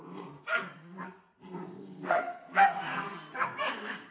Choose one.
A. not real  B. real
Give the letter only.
A